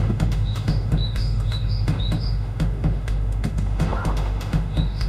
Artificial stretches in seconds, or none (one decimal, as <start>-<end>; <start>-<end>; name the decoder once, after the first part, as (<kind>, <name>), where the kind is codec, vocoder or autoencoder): 0.0-5.1 (autoencoder, DAC-VAE)